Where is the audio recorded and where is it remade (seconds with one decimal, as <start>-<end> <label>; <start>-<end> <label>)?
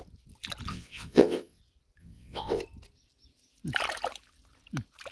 0.0-0.7 recorded; 0.7-1.6 remade; 1.6-2.0 recorded; 2.0-2.6 remade; 2.6-5.1 recorded